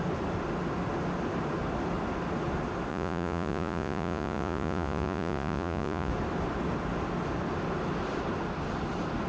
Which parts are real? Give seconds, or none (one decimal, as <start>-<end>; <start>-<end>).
0.0-2.9; 6.1-9.3